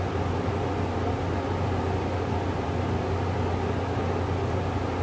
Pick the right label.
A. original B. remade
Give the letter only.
A